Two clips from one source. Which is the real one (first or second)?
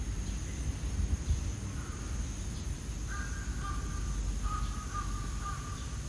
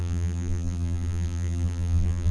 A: first